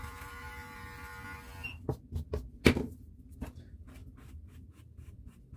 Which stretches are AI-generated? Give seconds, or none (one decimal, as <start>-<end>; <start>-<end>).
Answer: 0.0-1.1; 3.3-4.0; 4.7-5.6

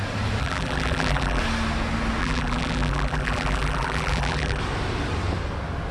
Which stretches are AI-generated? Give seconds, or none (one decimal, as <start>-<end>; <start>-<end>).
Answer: 0.4-1.4; 2.2-4.6

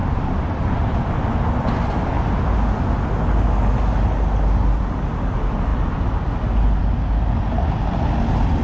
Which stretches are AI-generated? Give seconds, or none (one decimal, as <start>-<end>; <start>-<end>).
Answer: 0.0-2.2

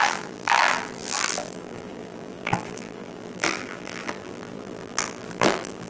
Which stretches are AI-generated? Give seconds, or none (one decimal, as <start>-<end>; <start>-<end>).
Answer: 0.0-5.9